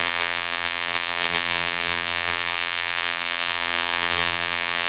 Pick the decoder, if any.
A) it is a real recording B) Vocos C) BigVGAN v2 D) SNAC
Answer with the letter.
C